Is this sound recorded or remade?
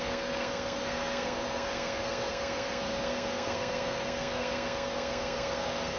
remade